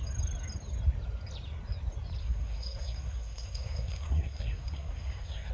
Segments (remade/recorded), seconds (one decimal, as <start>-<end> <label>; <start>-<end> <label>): 0.0-2.2 recorded; 2.2-5.5 remade